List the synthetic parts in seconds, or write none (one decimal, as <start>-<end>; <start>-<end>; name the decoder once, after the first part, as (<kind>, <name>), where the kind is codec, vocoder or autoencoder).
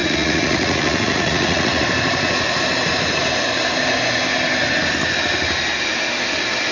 0.0-1.8 (vocoder, Vocos)